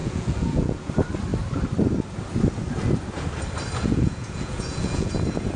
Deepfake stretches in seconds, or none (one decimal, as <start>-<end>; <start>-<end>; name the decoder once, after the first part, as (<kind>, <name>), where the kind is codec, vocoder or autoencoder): 0.0-0.9 (vocoder, Vocos); 3.8-5.1